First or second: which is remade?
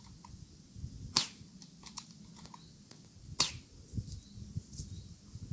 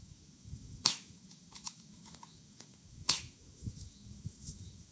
second